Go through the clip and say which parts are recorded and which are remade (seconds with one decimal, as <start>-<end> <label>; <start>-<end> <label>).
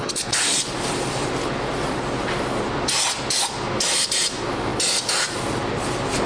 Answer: 0.0-6.3 recorded